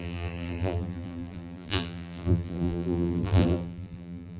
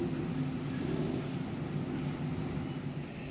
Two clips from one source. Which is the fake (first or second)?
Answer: first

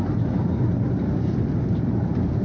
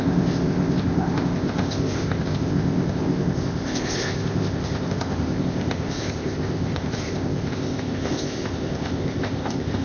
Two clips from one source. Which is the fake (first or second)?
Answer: second